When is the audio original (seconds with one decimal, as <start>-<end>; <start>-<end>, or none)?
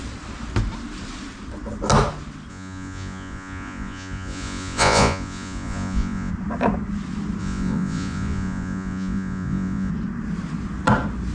0.0-2.5; 6.3-7.4; 9.9-11.3